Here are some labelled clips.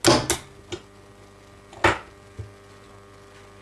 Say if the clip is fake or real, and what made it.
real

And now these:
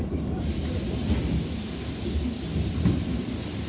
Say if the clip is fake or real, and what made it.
real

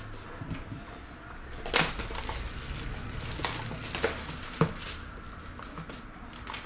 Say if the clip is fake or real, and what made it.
real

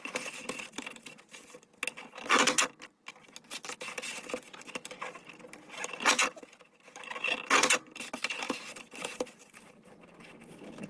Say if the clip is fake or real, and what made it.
real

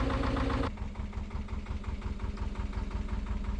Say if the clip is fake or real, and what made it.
real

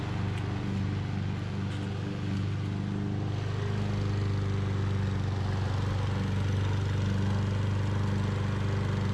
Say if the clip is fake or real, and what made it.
real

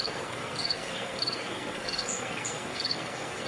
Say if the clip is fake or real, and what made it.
fake, codec, SNAC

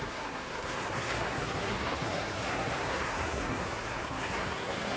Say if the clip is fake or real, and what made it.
fake, codec, SNAC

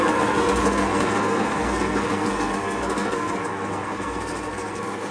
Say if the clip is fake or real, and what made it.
fake, codec, SNAC